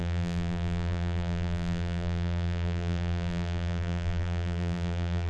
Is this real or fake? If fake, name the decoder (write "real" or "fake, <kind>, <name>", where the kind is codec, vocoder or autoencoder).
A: fake, vocoder, BigVGAN v2